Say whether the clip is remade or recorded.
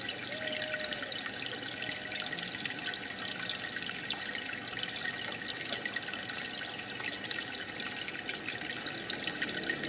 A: recorded